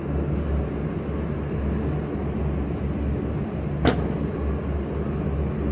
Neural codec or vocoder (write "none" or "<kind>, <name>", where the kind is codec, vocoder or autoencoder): none